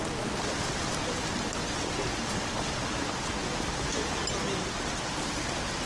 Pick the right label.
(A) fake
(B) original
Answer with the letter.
B